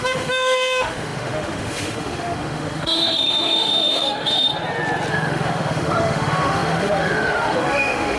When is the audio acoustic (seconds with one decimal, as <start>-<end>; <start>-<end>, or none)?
4.5-5.1